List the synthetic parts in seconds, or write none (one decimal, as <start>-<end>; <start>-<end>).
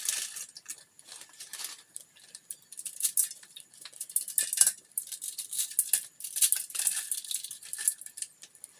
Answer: none